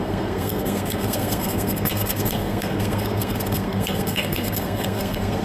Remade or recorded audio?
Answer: remade